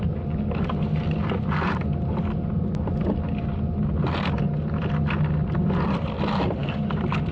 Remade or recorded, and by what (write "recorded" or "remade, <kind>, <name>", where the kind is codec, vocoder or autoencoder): recorded